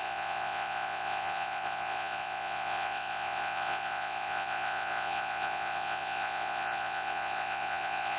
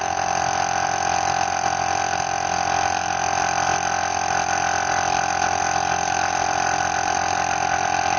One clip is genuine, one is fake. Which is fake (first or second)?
first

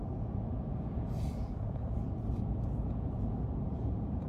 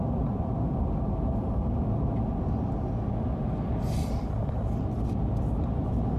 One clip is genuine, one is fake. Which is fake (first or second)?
first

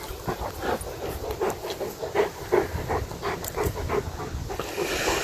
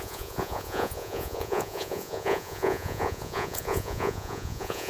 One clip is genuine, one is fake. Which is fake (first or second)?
second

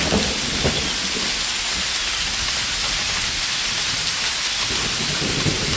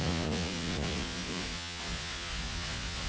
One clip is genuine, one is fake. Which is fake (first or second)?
second